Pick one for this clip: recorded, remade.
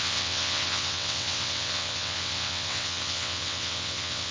remade